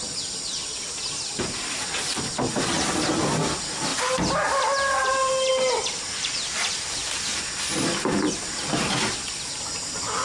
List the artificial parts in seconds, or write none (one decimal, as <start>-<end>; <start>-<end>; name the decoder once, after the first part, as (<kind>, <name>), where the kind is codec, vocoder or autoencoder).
none